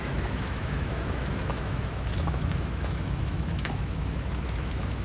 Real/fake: fake